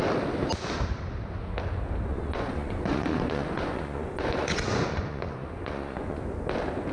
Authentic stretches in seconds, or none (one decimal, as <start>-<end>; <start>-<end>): 0.0-2.1; 6.2-6.9

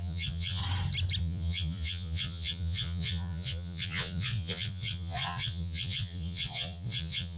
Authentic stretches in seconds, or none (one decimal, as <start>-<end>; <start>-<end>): 0.6-1.2

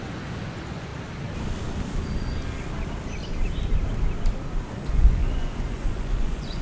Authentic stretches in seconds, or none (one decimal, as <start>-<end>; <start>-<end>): 0.9-4.9

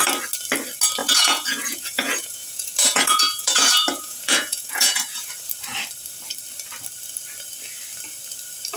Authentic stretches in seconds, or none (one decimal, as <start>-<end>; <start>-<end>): 0.0-1.0; 5.3-8.8

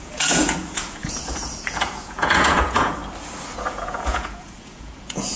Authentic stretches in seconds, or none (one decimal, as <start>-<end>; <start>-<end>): 3.0-3.6

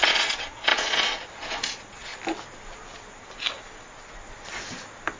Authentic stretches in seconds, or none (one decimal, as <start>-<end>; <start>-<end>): 2.1-5.2